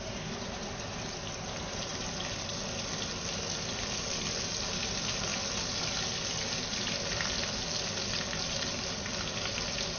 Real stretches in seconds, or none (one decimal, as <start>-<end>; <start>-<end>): 0.0-10.0